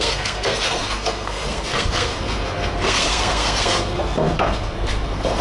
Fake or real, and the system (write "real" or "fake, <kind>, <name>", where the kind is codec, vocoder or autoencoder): fake, codec, SNAC